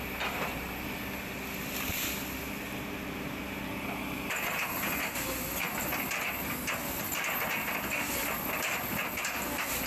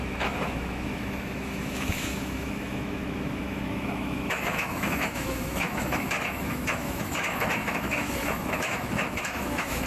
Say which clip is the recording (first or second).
first